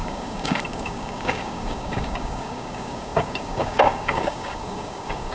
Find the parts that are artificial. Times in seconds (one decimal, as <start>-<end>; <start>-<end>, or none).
0.0-5.3